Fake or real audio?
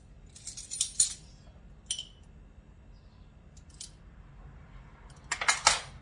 real